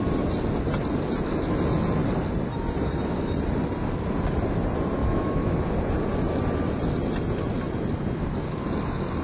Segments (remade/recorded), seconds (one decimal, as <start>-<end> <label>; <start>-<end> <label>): 0.0-5.0 recorded; 5.0-5.6 remade; 5.6-9.2 recorded